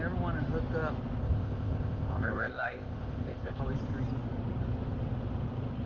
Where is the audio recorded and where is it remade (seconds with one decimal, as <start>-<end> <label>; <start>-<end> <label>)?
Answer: 0.0-1.2 recorded; 1.2-3.6 remade; 3.6-5.9 recorded